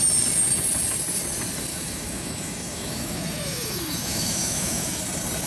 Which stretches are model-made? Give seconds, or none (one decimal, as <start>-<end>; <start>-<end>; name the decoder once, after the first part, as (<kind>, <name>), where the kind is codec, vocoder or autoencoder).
1.7-5.0 (autoencoder, DAC-VAE)